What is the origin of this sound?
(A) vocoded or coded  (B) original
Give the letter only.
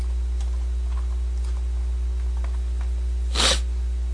B